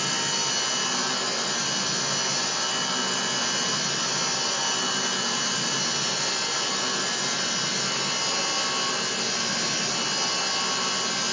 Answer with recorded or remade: recorded